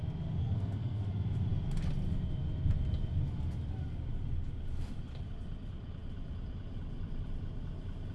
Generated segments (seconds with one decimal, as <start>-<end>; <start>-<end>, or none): 0.4-1.0